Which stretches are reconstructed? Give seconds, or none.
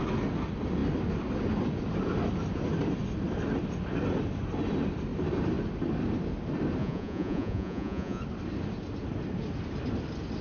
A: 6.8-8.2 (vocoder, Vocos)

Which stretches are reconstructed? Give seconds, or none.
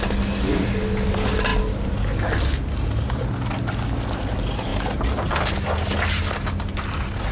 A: none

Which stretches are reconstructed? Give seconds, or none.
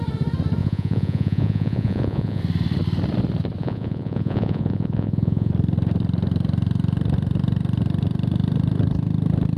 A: 0.6-2.4 (vocoder, Vocos); 3.6-5.5